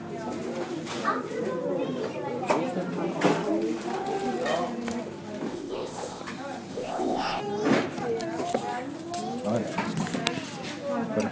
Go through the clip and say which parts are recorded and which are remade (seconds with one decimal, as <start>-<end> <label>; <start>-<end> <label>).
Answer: 0.0-5.5 recorded; 5.5-6.2 remade; 6.2-6.7 recorded; 6.7-7.4 remade; 7.4-11.3 recorded